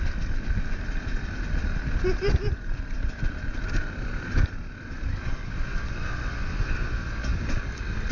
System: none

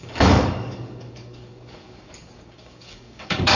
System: codec, DAC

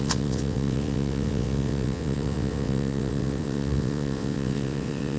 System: vocoder, WaveNeXt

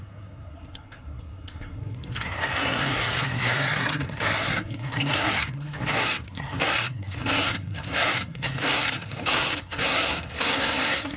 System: codec, SNAC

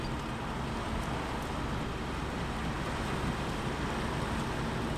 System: none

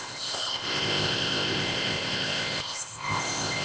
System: codec, ZipCodec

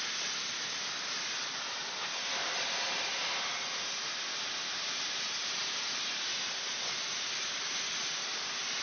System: none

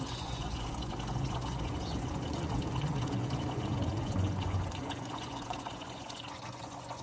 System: vocoder, Vocos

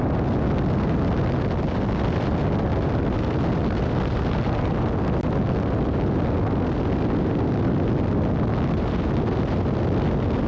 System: none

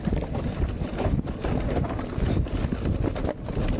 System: none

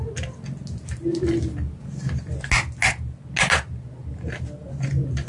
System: none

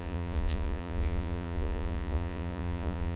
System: vocoder, Vocos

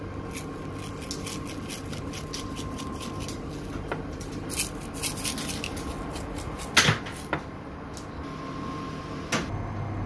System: none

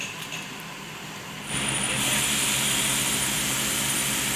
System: vocoder, BigVGAN v2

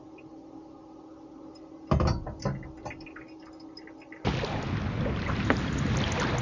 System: none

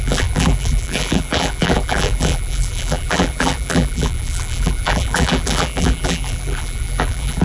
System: vocoder, BigVGAN v2